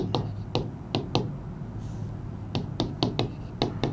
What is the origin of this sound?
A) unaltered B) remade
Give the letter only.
A